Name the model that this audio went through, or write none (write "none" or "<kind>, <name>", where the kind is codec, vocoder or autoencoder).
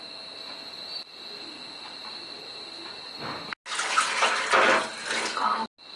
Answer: none